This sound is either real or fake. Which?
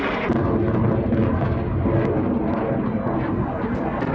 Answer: real